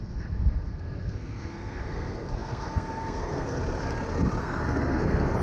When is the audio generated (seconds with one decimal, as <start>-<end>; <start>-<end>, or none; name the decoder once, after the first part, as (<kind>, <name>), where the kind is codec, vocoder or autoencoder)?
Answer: 0.0-3.6 (codec, SNAC); 4.4-5.4